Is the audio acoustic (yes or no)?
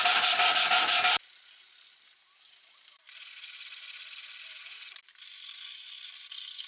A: yes